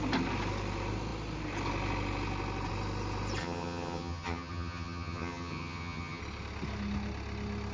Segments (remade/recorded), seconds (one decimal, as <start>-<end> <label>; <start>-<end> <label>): 0.0-3.4 recorded; 3.4-6.2 remade; 6.2-7.7 recorded